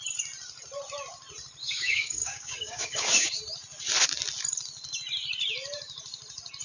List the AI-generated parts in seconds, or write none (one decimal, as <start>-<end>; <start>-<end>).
1.6-3.4